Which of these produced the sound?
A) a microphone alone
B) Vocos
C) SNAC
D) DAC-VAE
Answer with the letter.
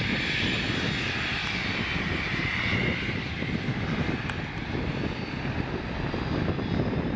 A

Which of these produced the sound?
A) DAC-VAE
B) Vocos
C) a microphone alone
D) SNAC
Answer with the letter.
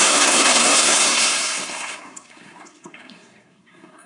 D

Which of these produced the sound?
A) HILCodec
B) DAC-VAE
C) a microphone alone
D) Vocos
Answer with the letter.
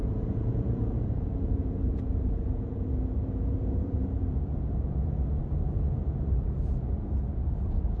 D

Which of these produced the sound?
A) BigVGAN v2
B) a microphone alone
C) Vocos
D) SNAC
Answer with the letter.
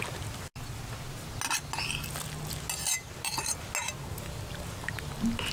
B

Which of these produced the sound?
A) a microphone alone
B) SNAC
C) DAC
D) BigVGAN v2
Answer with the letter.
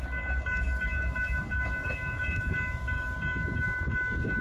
C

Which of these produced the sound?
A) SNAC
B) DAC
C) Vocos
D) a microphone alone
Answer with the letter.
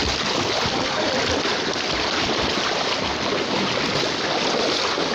D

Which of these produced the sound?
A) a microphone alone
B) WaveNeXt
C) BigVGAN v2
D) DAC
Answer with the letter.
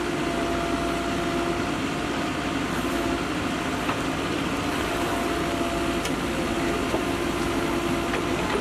A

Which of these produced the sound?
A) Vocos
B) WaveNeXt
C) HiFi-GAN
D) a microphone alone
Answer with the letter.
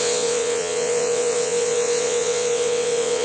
B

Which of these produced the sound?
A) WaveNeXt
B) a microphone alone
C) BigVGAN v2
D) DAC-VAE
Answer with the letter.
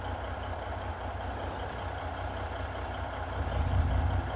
B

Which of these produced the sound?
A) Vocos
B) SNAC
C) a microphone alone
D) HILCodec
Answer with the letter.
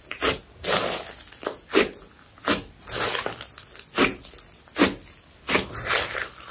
C